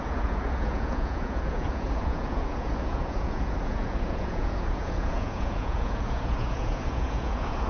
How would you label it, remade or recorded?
remade